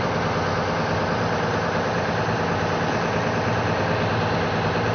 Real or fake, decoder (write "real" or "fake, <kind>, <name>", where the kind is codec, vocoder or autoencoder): real